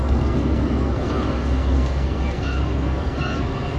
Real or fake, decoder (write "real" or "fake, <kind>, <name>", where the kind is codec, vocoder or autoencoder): fake, codec, SNAC